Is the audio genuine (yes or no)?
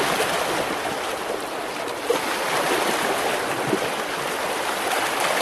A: yes